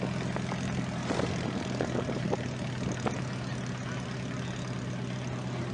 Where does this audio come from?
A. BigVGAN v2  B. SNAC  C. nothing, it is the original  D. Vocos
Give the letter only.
C